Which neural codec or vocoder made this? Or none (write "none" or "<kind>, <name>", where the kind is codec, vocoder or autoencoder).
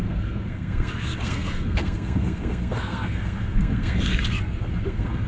codec, SNAC